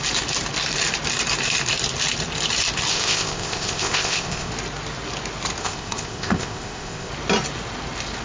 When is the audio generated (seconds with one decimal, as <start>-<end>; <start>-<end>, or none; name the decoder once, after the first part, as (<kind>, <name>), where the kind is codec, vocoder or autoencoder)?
2.9-4.5 (codec, ZipCodec); 5.6-7.1